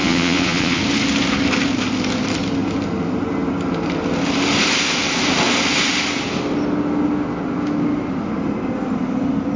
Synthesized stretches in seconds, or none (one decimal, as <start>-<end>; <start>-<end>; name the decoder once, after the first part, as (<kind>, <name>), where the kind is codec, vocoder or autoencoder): 0.0-0.8 (vocoder, Vocos)